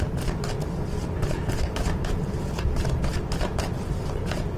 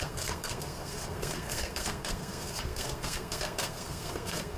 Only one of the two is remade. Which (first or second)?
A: second